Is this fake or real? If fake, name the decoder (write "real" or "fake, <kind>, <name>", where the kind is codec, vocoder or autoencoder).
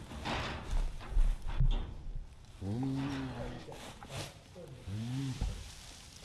real